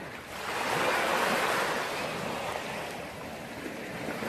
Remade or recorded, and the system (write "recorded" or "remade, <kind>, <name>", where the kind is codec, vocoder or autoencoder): recorded